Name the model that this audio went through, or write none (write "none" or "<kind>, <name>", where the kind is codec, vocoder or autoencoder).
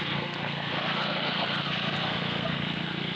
codec, SNAC